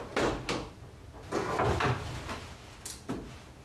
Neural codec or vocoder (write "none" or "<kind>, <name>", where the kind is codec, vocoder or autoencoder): none